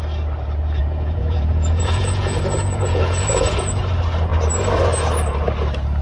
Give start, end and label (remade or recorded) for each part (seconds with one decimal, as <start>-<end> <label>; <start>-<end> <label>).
0.0-0.8 recorded; 0.8-3.8 remade; 3.8-6.0 recorded